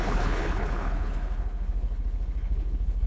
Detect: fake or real fake